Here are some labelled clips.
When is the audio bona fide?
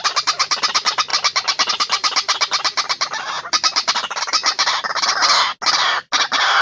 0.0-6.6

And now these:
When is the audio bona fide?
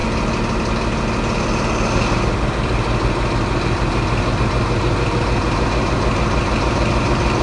0.0-7.4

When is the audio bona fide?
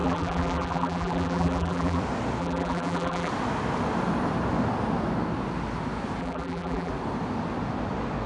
2.0-2.4; 3.3-6.2; 6.9-8.3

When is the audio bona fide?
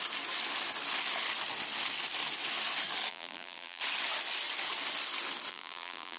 0.0-3.1; 3.8-5.5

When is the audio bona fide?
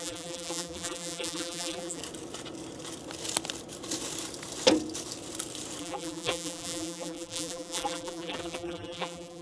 2.0-5.8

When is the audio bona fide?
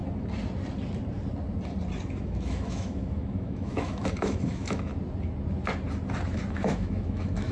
0.0-2.2; 4.9-6.5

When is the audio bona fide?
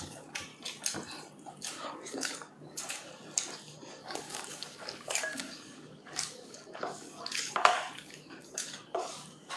0.5-1.5; 3.1-3.9